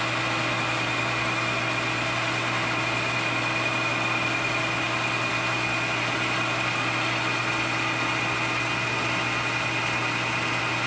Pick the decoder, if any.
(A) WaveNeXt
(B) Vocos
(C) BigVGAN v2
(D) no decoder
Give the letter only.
D